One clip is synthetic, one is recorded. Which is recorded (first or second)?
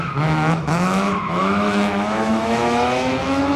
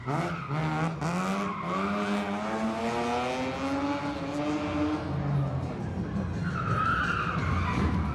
second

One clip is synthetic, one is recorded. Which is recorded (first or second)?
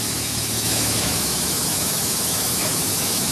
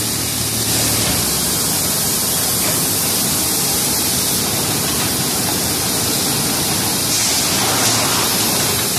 second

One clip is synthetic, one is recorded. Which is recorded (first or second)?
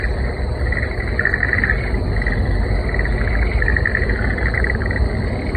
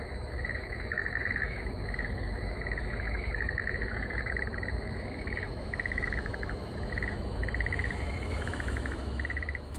first